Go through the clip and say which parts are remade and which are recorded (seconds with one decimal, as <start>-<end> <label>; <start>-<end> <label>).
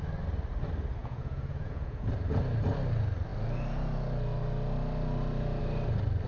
0.0-1.0 recorded; 1.0-2.1 remade; 2.1-6.3 recorded